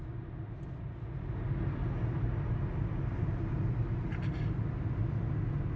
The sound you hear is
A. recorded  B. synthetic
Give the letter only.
A